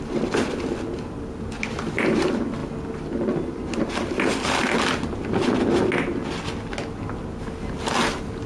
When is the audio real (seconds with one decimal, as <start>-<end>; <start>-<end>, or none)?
0.0-8.5

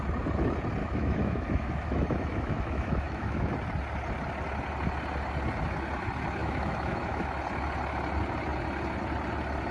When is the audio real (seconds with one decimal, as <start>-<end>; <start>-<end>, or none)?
0.0-0.8; 3.5-6.4; 7.4-9.7